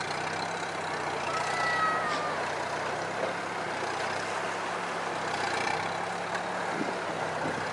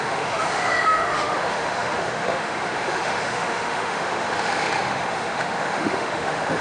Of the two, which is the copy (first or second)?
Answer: second